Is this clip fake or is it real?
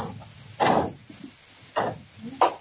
real